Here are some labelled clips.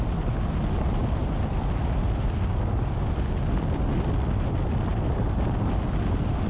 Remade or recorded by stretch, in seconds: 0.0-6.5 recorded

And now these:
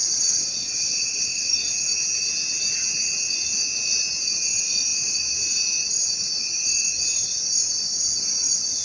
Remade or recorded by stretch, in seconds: 0.0-1.5 remade; 1.5-8.8 recorded

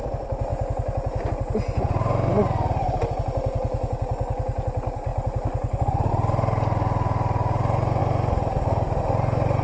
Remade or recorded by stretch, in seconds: 0.0-9.6 recorded

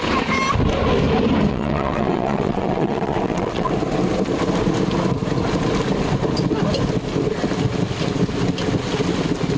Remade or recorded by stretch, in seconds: 0.0-1.5 recorded; 1.5-3.7 remade; 3.7-9.6 recorded

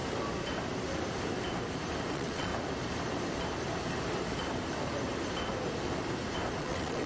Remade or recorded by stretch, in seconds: 0.0-2.1 recorded; 2.1-2.5 remade; 2.5-6.6 recorded; 6.6-7.1 remade

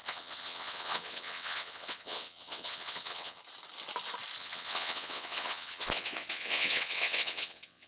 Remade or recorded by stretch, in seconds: 0.0-3.4 remade; 3.4-4.4 recorded; 4.4-7.9 remade